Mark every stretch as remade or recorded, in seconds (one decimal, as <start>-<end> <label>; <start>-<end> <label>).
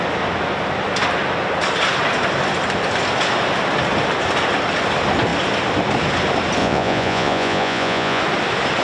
0.0-6.6 recorded; 6.6-8.2 remade; 8.2-8.8 recorded